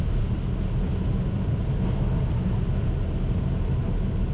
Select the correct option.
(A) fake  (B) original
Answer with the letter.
B